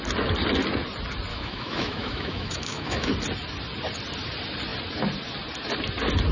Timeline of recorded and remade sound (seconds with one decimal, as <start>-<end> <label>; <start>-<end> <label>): 0.0-1.3 recorded; 1.3-3.1 remade; 3.1-6.3 recorded